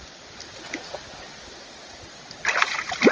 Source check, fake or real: real